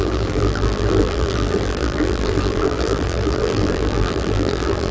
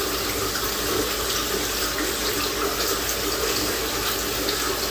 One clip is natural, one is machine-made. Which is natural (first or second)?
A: second